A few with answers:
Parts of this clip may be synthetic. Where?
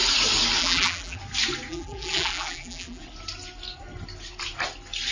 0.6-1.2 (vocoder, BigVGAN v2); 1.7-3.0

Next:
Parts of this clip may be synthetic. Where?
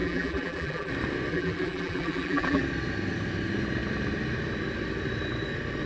0.0-0.9 (vocoder, BigVGAN v2); 1.3-2.6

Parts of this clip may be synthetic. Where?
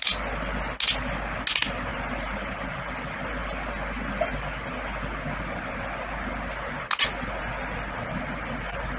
1.9-2.9 (vocoder, BigVGAN v2)